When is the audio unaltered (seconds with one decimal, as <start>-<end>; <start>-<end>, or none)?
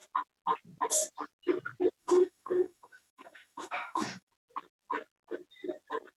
0.0-2.0; 4.3-6.2